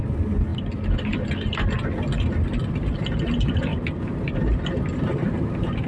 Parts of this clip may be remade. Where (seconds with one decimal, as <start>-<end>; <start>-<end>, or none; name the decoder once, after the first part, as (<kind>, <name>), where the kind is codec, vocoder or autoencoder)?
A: none

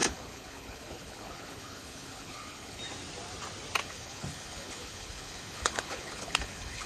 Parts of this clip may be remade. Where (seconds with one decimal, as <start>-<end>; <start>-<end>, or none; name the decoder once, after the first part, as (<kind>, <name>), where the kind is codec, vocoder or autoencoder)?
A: 0.0-2.8 (codec, HILCodec); 3.8-6.9

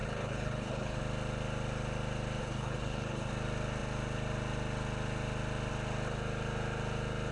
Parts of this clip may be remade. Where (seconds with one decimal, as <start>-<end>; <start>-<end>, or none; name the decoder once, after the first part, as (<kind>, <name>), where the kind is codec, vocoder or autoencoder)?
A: 0.0-1.0 (codec, HILCodec); 2.4-3.3

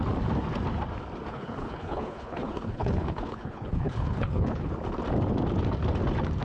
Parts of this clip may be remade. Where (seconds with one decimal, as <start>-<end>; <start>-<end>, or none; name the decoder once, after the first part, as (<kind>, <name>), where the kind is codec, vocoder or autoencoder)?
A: 1.3-4.7 (codec, HILCodec)

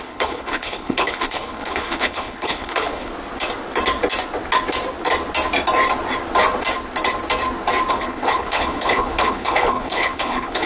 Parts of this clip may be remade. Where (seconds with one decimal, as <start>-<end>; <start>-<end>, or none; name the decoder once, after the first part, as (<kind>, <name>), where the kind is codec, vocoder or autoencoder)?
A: 0.0-3.1 (codec, HILCodec); 7.9-10.7

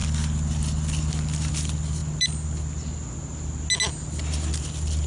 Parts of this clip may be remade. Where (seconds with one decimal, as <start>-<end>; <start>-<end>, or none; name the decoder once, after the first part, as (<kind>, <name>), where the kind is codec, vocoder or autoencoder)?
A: none

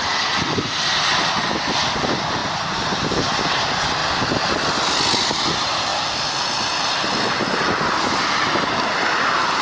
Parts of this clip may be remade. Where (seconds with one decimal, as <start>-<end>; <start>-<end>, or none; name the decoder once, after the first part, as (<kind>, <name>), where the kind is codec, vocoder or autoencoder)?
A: none

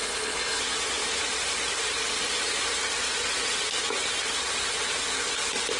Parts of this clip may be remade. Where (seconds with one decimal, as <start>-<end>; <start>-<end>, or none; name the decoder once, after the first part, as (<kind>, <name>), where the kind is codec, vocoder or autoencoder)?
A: 0.0-0.6 (codec, HILCodec)